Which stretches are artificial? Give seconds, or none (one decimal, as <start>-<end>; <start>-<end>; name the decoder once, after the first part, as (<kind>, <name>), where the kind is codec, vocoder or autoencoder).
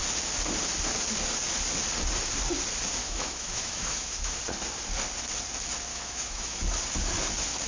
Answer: 3.0-4.4 (autoencoder, DAC-VAE); 5.9-6.6